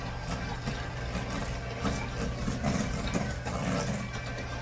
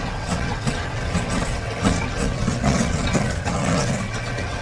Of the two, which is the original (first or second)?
first